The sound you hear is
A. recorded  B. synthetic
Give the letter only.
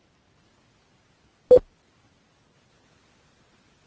A